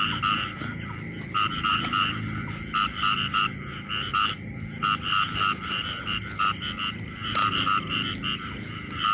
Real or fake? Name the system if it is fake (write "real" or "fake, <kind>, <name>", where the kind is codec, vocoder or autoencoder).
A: fake, vocoder, BigVGAN v2